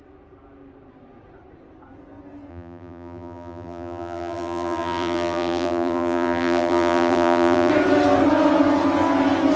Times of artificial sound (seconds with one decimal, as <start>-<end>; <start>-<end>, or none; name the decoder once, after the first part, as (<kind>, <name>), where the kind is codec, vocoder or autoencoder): 2.5-7.7 (vocoder, BigVGAN v2)